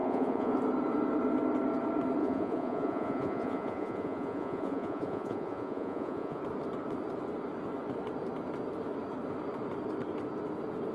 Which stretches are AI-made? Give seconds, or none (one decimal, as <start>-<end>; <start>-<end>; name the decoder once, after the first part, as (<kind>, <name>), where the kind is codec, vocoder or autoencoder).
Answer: 0.0-0.5 (vocoder, Vocos); 2.2-6.4